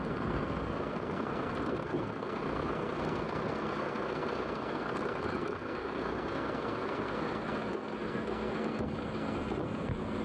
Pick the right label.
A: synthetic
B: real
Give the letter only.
A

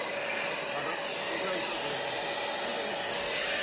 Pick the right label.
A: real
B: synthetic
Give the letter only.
A